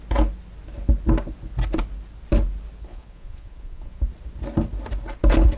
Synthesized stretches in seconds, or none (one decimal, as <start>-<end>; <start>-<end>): 2.8-4.1